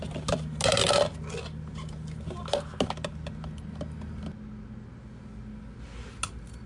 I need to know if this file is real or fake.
real